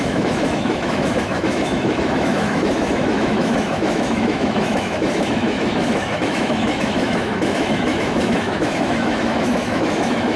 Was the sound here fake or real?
fake